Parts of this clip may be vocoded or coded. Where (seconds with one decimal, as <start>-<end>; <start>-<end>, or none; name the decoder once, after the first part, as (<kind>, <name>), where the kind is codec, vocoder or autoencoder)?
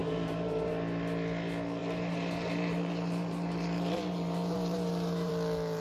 0.0-0.7 (vocoder, BigVGAN v2); 1.8-5.3